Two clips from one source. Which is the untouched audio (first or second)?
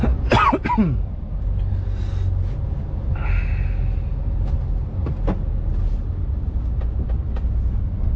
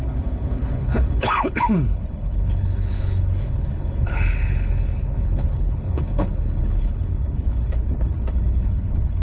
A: first